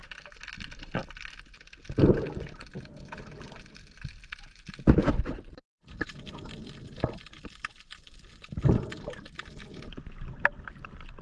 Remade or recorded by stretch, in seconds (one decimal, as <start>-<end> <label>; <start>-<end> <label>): 0.0-11.2 recorded